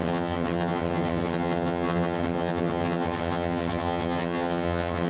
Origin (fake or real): fake